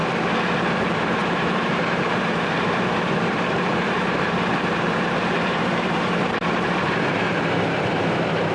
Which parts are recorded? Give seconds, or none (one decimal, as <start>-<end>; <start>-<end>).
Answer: 0.0-0.7